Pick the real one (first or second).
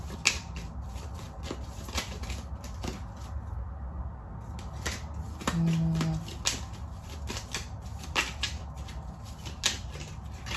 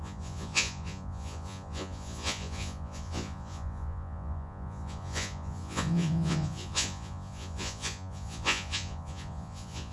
first